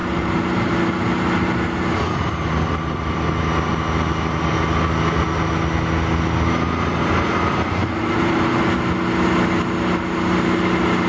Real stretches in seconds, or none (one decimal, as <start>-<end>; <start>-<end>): 0.8-7.8; 8.4-11.1